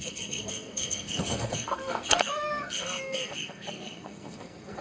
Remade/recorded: remade